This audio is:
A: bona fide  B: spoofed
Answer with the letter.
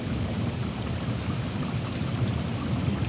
A